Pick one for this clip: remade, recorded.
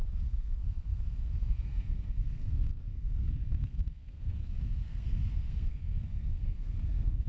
remade